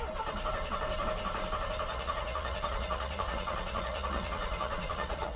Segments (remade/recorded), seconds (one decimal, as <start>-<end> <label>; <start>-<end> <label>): 0.0-1.9 recorded; 1.9-5.4 remade